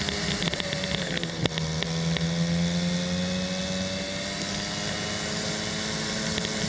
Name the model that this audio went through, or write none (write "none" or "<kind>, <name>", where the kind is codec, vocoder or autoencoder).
none